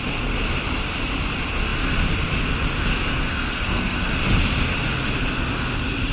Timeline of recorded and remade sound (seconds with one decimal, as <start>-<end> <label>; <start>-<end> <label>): 0.0-2.9 recorded; 2.9-4.1 remade; 4.1-6.1 recorded